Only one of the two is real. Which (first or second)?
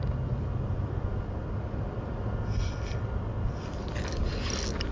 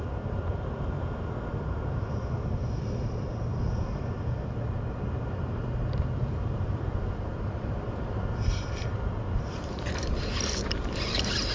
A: first